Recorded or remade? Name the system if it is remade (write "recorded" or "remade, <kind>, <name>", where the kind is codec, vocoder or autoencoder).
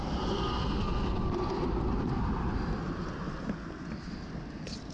recorded